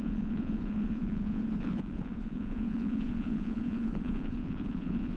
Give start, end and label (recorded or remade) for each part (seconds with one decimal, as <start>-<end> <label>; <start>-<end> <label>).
0.0-5.2 remade